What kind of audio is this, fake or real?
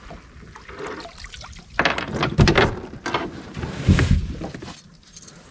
real